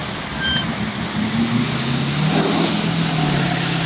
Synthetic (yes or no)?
no